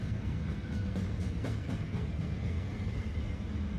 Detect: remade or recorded remade